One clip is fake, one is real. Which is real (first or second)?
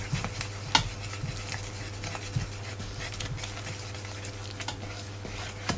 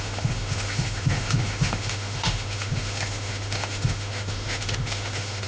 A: first